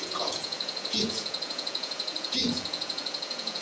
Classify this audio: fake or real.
fake